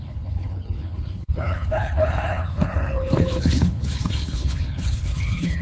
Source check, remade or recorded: remade